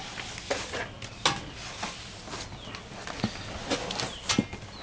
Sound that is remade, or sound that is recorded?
recorded